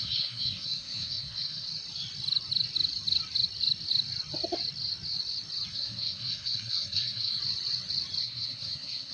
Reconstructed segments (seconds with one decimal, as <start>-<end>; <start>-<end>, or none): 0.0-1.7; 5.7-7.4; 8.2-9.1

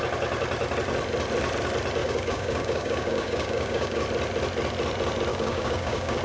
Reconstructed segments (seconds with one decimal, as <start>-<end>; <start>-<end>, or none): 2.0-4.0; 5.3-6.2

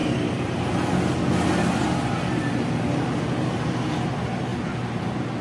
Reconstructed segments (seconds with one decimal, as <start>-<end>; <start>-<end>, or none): none

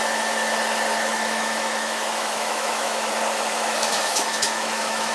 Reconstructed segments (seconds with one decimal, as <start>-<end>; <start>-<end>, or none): 1.1-3.1; 3.5-5.1

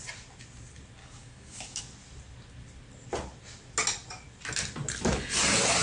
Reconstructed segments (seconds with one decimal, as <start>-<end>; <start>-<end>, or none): 1.0-1.8

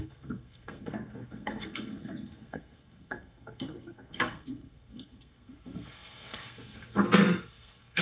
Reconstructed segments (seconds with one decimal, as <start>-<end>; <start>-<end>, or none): 0.0-8.0